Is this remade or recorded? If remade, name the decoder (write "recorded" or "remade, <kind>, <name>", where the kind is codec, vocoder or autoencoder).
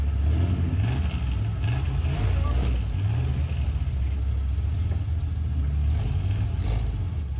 recorded